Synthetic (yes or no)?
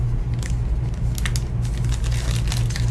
no